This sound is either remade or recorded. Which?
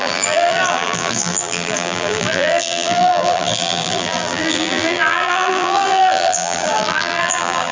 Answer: remade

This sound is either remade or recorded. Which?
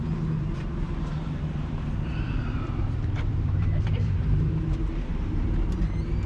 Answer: remade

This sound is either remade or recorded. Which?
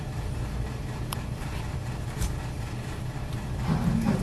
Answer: remade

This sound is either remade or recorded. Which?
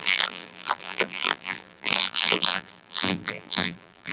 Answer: remade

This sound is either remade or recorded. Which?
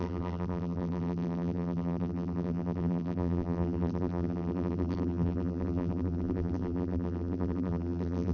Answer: remade